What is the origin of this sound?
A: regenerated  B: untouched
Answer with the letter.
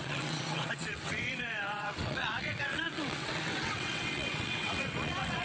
A